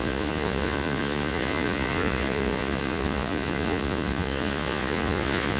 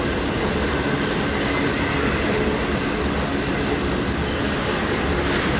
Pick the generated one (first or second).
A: first